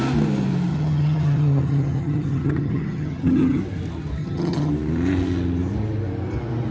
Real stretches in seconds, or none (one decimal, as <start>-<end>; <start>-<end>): 0.0-0.7; 3.6-4.2; 4.7-6.7